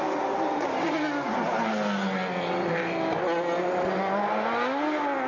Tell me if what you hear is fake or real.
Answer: real